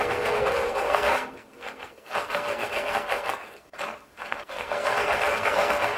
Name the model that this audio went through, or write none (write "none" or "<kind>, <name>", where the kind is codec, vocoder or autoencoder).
codec, SNAC